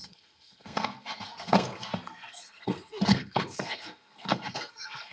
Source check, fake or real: fake